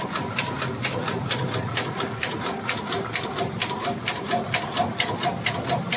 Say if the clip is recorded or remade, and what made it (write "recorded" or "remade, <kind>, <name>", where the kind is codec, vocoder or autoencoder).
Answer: recorded